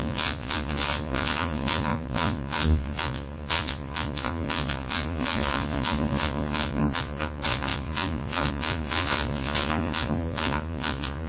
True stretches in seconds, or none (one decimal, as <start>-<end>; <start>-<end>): none